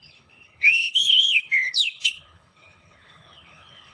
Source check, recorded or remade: remade